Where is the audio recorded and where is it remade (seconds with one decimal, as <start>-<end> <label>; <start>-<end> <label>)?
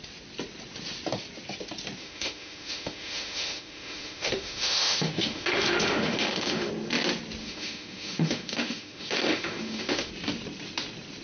0.0-2.0 recorded; 2.0-6.7 remade; 6.7-7.4 recorded; 7.4-10.1 remade; 10.1-11.2 recorded